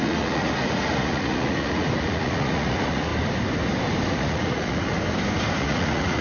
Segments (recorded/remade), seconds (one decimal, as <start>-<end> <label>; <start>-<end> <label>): 0.0-3.1 remade; 3.1-4.1 recorded; 4.1-4.9 remade; 4.9-5.6 recorded; 5.6-6.2 remade